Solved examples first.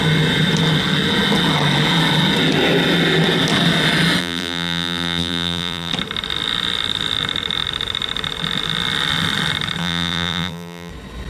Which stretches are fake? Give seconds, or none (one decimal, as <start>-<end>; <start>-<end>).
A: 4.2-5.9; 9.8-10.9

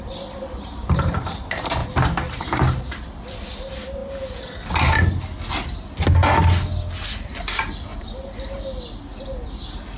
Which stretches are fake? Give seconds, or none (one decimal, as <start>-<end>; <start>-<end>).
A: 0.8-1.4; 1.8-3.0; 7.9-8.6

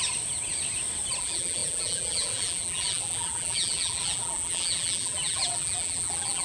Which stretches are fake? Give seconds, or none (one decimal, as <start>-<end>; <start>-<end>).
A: 1.2-6.4

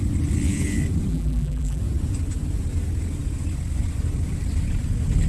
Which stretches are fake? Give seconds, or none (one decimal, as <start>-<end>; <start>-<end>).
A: 1.1-1.8

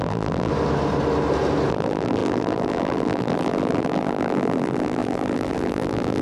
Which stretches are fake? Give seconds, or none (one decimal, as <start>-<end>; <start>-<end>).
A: 0.0-0.5; 1.7-6.2

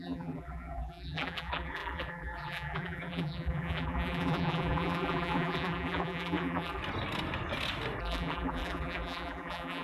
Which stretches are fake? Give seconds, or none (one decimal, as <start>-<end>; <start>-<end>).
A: 0.0-6.8; 8.0-9.8

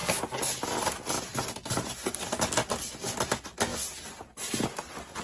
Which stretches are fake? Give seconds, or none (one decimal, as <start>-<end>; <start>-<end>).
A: 3.7-5.2